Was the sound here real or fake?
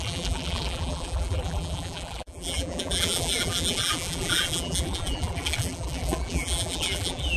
fake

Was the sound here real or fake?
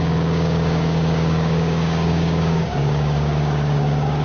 fake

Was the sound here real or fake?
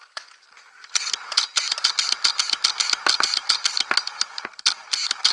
real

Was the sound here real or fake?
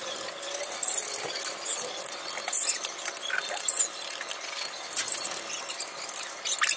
real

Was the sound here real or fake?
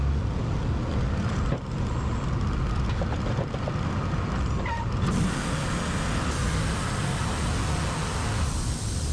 real